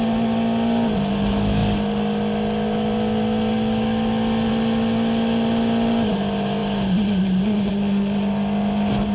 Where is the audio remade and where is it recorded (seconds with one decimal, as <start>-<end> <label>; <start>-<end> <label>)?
0.0-9.1 recorded